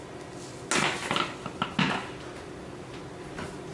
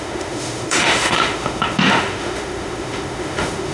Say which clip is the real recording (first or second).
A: first